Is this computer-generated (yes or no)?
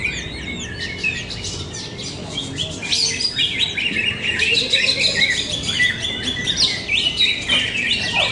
no